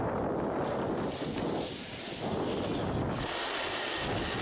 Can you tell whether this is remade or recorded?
recorded